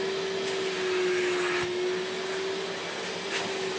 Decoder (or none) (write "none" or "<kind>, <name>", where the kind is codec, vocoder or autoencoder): none